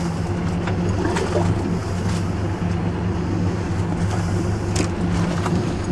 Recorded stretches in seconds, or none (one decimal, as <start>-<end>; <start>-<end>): 0.0-5.9